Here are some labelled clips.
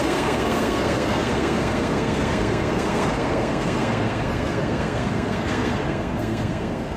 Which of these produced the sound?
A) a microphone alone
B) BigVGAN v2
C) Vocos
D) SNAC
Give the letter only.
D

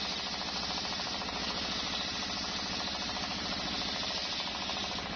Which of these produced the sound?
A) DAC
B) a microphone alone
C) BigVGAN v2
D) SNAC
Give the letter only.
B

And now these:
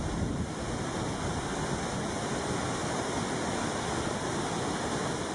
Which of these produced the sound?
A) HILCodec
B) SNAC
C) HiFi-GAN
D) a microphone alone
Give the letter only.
D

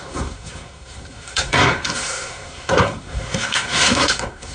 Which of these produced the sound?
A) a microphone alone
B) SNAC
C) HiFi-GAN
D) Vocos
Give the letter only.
B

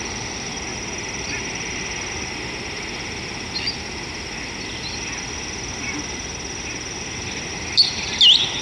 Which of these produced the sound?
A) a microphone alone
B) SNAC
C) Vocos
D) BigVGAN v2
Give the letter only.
A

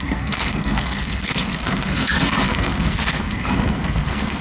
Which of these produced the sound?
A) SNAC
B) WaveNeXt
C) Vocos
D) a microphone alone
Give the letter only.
A